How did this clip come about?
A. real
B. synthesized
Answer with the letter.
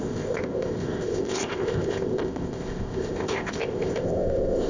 B